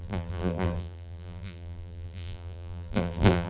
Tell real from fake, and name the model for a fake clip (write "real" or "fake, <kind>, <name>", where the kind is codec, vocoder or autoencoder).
fake, vocoder, BigVGAN v2